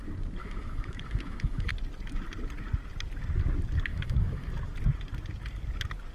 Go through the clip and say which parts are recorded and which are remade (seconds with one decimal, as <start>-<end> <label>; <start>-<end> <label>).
0.0-0.4 recorded; 0.4-1.7 remade; 1.7-3.9 recorded; 3.9-4.5 remade; 4.5-6.1 recorded